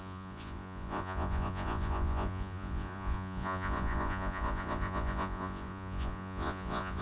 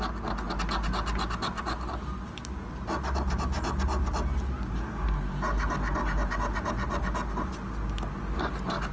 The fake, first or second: first